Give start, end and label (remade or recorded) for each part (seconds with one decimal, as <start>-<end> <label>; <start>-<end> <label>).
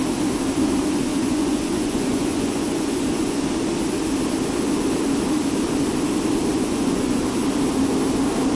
0.0-1.1 recorded; 1.1-3.4 remade; 3.4-6.5 recorded; 6.5-7.2 remade; 7.2-8.5 recorded